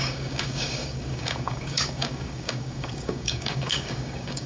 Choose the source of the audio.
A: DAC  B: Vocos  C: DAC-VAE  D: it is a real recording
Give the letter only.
A